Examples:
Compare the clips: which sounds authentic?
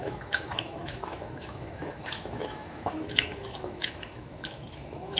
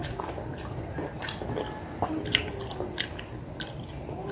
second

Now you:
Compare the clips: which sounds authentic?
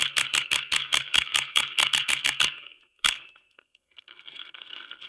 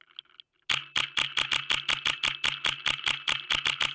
second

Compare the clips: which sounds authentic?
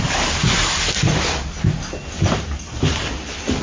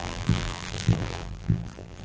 first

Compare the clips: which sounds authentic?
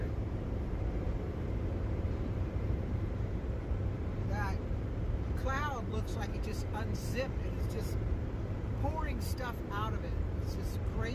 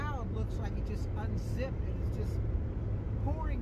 second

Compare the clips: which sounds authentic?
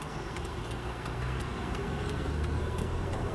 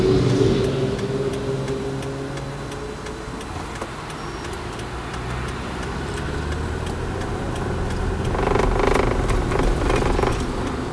second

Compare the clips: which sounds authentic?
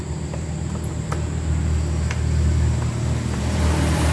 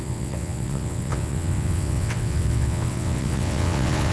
first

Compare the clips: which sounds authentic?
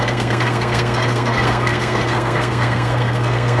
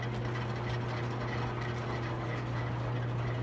second